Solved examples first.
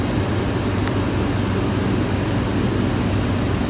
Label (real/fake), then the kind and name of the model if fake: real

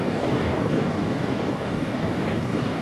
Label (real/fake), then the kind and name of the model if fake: fake, codec, DAC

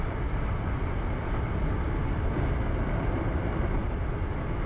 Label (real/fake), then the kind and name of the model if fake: real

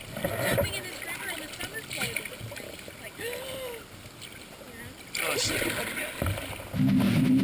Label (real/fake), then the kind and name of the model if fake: real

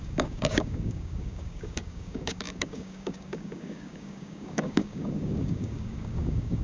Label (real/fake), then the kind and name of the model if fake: fake, codec, DAC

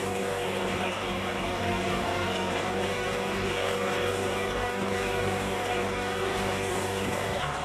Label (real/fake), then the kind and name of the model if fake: fake, codec, DAC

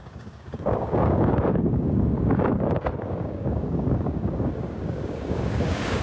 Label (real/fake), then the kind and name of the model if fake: fake, codec, DAC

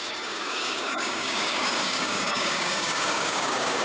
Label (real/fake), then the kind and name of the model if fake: fake, codec, DAC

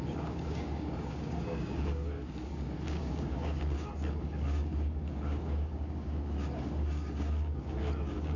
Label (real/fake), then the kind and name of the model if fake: fake, codec, DAC